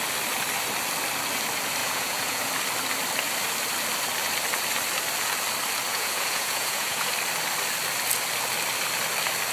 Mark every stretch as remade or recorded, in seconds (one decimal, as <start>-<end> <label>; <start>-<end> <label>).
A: 0.0-1.8 recorded; 1.8-2.5 remade; 2.5-5.9 recorded; 5.9-7.1 remade; 7.1-9.5 recorded